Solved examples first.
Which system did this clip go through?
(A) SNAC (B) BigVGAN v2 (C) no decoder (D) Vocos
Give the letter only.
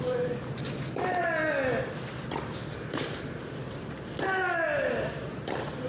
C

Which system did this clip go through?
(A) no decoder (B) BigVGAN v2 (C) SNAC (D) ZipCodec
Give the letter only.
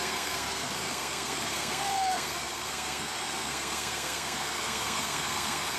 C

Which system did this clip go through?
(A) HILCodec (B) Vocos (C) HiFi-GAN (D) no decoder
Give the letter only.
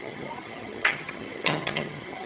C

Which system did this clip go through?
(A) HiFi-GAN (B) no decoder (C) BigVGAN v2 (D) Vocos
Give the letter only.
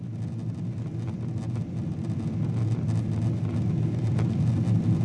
B